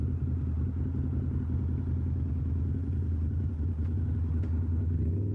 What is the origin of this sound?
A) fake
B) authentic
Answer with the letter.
B